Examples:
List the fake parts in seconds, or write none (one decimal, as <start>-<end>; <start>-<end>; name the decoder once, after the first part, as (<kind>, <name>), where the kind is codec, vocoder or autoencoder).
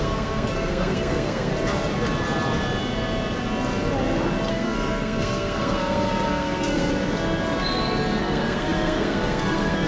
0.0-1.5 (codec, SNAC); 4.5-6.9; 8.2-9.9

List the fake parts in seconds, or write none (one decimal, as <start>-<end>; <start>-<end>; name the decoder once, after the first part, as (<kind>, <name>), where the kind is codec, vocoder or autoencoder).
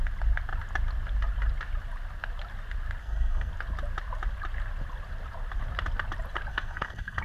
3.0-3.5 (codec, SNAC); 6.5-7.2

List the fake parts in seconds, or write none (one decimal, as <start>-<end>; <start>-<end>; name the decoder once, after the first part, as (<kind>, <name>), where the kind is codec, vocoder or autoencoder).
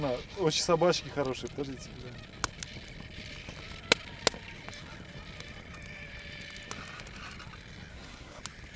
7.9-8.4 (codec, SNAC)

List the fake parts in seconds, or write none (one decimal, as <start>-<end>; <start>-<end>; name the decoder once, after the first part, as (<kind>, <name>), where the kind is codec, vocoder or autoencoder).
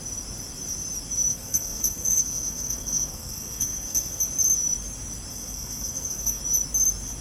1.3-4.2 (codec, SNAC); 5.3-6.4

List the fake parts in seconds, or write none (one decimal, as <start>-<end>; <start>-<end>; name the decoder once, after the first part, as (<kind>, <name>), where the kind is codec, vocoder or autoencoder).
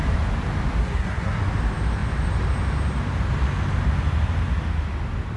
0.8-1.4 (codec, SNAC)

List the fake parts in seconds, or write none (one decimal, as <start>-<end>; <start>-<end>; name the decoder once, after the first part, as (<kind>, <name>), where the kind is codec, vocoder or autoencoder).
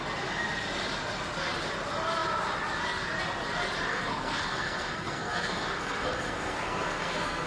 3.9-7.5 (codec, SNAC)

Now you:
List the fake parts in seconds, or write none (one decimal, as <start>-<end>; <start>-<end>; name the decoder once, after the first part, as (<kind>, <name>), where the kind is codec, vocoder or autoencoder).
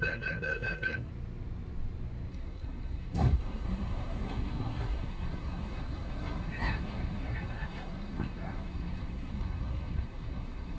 0.0-1.1 (codec, SNAC); 2.3-10.8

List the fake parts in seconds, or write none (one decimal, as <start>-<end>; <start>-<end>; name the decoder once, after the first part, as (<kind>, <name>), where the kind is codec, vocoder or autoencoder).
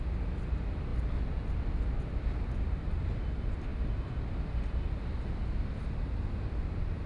none